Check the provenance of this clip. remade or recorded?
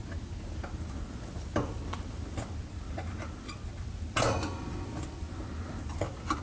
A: recorded